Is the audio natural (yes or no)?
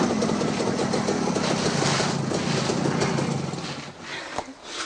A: yes